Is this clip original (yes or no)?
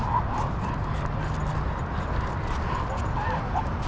yes